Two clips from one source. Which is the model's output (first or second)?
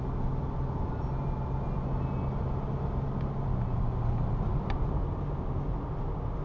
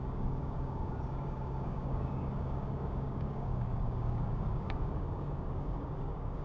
second